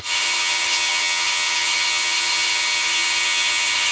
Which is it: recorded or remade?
remade